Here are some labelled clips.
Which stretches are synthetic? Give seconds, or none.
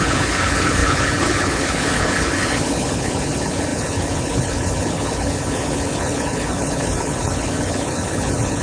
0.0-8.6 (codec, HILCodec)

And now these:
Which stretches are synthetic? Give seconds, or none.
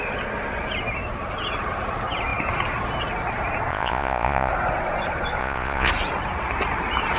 3.7-4.5 (vocoder, Vocos); 5.4-5.9